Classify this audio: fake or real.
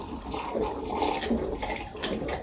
real